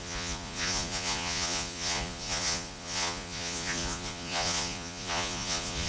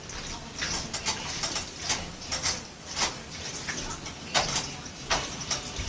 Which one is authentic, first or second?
second